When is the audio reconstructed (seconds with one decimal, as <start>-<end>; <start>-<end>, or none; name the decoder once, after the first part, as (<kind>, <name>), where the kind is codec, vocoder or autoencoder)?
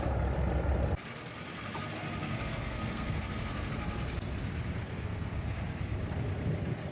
2.2-3.7 (codec, SNAC); 4.8-5.3